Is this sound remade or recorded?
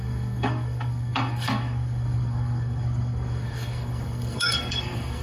remade